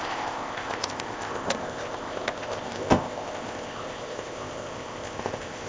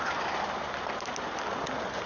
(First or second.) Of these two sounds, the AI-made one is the first